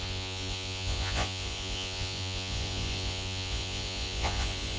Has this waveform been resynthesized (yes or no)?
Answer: yes